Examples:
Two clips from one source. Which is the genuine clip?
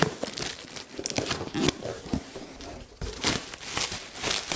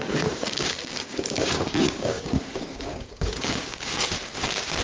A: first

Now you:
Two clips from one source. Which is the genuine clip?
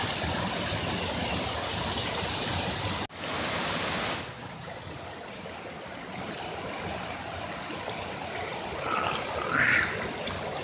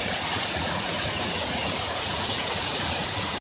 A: first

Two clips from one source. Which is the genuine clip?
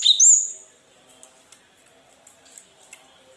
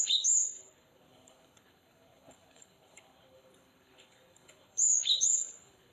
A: first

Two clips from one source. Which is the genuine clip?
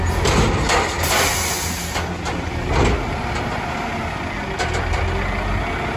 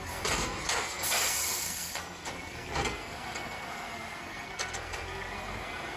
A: first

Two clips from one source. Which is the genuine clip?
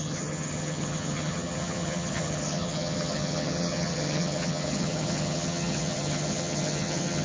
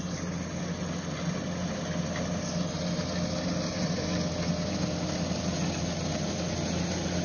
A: second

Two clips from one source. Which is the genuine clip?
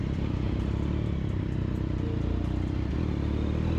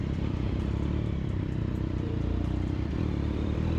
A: first